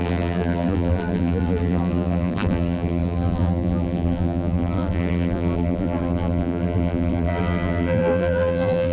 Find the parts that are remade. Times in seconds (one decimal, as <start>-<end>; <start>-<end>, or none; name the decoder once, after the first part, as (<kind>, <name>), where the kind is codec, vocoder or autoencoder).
0.0-8.9 (vocoder, BigVGAN v2)